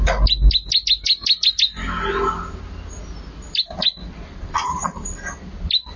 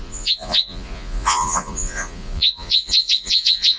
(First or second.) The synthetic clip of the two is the second